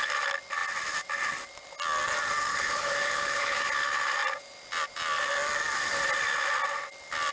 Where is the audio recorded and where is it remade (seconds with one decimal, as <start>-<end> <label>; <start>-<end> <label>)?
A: 0.0-2.5 recorded; 2.5-3.6 remade; 3.6-7.3 recorded